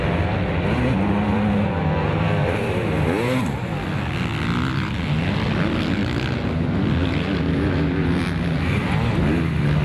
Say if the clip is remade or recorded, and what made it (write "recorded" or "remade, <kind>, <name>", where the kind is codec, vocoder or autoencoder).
recorded